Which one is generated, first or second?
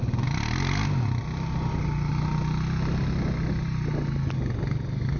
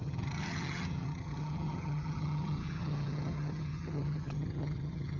second